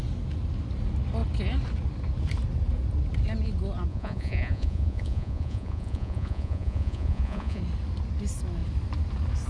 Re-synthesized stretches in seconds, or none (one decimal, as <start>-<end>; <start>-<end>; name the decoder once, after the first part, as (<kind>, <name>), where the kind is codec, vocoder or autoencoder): 3.9-7.6 (vocoder, Vocos)

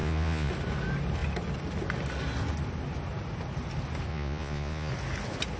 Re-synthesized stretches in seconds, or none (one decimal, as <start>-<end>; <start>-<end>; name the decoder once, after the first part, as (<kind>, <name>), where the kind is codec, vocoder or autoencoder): 0.0-0.5 (vocoder, Vocos); 4.1-4.9

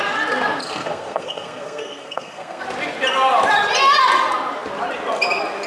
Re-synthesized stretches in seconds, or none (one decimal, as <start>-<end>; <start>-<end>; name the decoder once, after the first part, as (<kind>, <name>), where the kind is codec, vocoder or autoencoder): 0.6-2.6 (codec, SNAC)

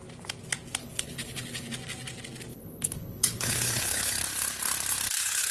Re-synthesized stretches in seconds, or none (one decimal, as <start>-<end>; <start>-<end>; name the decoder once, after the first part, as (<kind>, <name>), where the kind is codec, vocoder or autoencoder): 0.8-1.7 (codec, HILCodec); 2.5-4.1

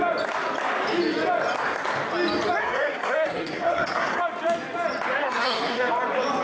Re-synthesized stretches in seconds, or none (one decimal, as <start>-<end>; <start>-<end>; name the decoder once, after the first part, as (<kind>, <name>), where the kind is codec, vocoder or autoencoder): 2.6-4.2 (codec, SNAC); 5.2-5.9